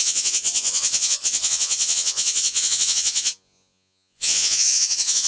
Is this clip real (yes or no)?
no